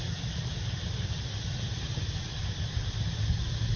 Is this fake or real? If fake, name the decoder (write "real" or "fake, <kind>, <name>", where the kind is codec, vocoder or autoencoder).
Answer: real